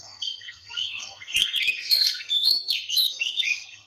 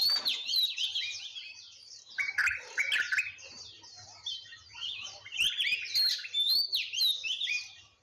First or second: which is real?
second